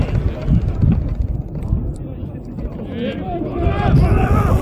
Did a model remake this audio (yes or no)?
no